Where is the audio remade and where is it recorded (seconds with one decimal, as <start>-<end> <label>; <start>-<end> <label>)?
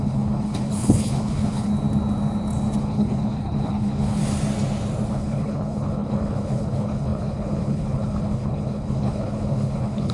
0.0-1.7 remade; 1.7-2.8 recorded; 2.8-4.2 remade; 4.2-5.1 recorded; 5.1-10.1 remade